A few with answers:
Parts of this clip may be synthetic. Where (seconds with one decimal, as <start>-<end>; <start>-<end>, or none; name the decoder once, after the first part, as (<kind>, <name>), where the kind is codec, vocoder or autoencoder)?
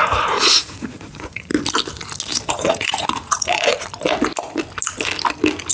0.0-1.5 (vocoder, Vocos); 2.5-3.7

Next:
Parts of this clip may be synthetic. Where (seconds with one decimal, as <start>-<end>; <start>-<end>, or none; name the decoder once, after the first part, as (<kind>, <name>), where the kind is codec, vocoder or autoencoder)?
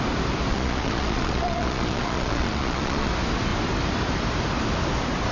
0.5-3.1 (vocoder, Vocos)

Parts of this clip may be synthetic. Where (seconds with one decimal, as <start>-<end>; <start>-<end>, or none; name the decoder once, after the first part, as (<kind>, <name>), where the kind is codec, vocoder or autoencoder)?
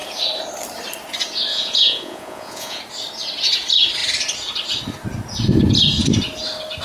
1.5-2.8 (vocoder, Vocos)